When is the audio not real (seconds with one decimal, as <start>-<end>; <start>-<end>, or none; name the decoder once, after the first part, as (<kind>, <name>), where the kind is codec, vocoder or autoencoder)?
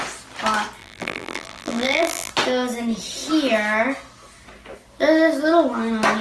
0.8-2.3 (vocoder, BigVGAN v2)